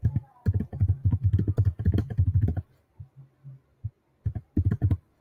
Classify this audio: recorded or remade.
recorded